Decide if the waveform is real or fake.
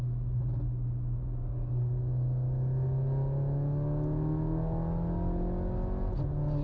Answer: real